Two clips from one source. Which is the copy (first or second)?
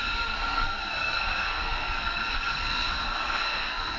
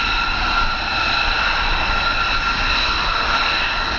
first